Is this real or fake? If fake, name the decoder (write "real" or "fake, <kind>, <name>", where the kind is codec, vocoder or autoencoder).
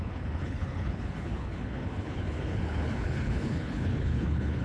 fake, codec, HILCodec